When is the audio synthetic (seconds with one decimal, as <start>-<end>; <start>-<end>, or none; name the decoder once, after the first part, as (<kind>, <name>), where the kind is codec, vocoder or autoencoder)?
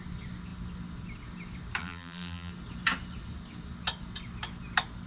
1.8-2.5 (vocoder, BigVGAN v2)